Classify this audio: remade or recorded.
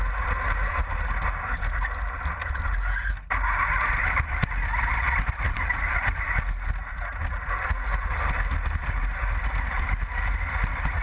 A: recorded